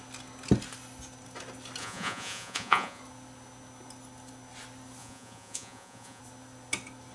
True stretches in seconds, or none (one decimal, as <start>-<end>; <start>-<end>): 0.0-1.8; 3.0-5.0; 6.2-7.1